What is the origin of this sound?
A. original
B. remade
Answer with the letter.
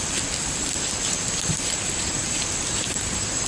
B